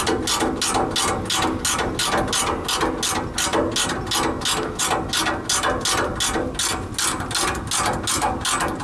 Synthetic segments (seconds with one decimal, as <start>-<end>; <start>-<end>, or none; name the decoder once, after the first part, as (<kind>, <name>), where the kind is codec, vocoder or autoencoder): none